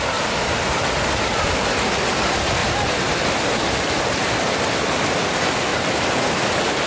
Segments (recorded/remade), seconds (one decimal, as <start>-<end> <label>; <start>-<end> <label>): 0.0-5.7 recorded; 5.7-6.4 remade; 6.4-6.9 recorded